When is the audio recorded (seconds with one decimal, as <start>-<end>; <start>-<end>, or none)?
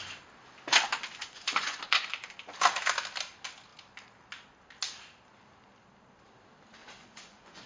0.0-1.1; 2.1-6.8